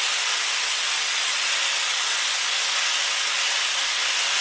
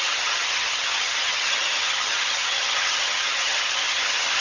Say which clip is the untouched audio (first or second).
first